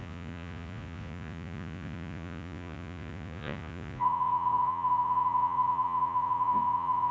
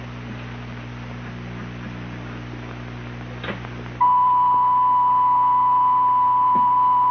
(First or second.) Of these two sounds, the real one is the second